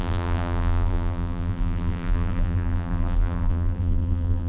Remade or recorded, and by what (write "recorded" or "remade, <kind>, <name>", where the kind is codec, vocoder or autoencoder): remade, vocoder, BigVGAN v2